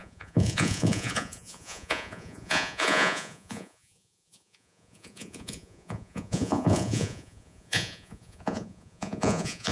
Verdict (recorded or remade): remade